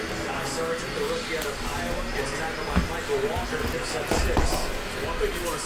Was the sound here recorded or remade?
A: recorded